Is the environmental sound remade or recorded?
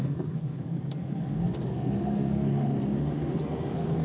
remade